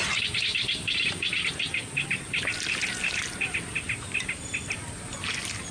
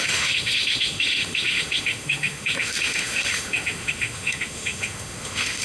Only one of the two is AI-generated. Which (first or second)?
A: second